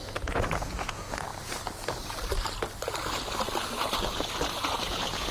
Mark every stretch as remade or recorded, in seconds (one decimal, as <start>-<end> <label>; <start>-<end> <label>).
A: 0.0-1.3 remade; 1.3-4.5 recorded; 4.5-5.3 remade